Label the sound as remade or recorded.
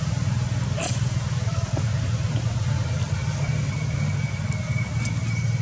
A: recorded